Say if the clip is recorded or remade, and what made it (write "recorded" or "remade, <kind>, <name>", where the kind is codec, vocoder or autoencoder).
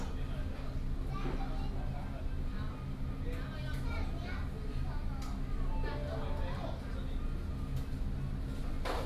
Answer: recorded